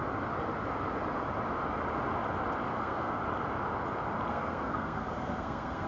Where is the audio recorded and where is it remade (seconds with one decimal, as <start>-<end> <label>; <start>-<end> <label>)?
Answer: 0.0-2.7 recorded; 2.7-3.2 remade; 3.2-4.3 recorded; 4.3-5.9 remade

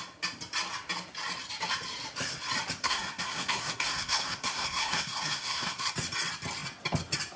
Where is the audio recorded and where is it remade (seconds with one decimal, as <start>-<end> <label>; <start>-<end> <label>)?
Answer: 0.0-2.8 recorded; 2.8-5.9 remade; 5.9-7.4 recorded

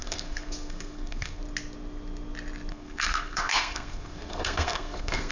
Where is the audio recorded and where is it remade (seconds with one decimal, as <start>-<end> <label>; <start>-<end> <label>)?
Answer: 0.0-1.4 remade; 1.4-2.7 recorded; 2.7-5.3 remade

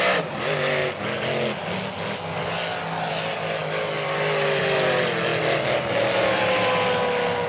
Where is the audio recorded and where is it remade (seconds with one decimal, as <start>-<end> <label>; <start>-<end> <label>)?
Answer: 0.0-7.5 recorded

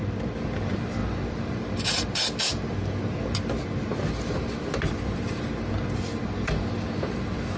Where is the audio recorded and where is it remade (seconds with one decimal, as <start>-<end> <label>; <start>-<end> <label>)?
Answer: 0.0-7.6 recorded

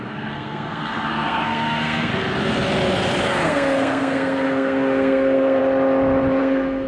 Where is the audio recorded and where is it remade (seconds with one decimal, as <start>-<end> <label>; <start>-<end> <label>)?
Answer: 0.0-2.1 remade; 2.1-3.2 recorded; 3.2-5.6 remade; 5.6-6.4 recorded; 6.4-6.9 remade

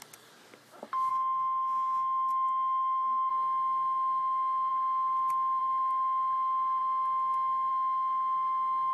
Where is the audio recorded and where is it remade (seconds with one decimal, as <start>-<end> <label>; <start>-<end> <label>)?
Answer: 0.0-1.1 recorded; 1.1-3.3 remade; 3.3-8.9 recorded